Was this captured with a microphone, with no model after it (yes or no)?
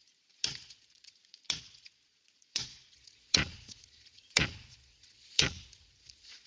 no